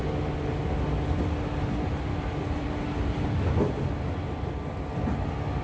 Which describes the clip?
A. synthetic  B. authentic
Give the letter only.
B